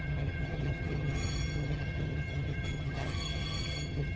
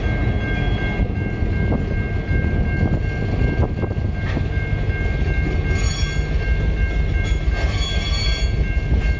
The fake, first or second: first